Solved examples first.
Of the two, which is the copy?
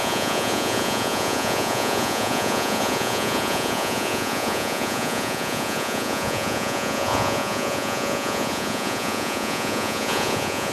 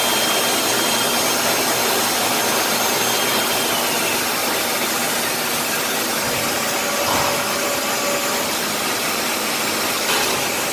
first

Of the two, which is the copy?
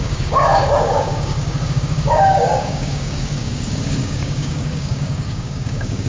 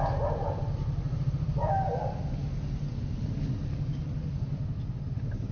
first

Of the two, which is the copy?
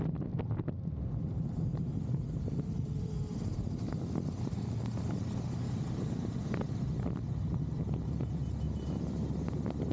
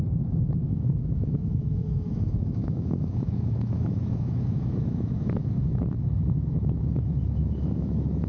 second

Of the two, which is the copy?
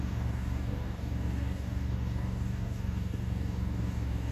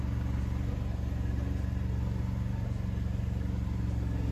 first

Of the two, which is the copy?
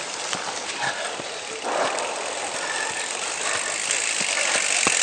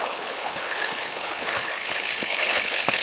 second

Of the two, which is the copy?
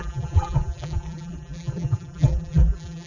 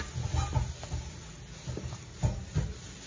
first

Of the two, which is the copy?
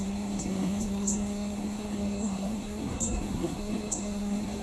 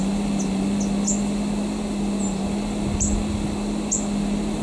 first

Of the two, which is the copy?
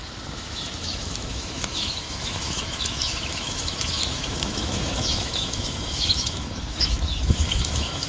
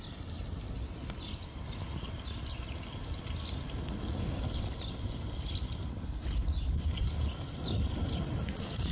first